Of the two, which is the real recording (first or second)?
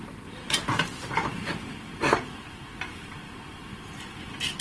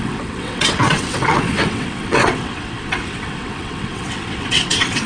first